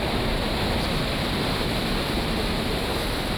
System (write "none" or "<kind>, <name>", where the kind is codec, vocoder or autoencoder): none